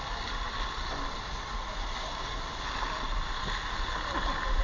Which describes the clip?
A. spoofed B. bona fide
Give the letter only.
B